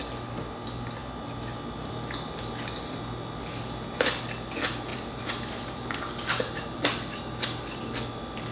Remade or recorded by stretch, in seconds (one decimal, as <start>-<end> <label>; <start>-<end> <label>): 0.0-4.9 recorded; 4.9-8.1 remade; 8.1-8.5 recorded